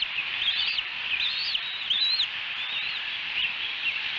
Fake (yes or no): yes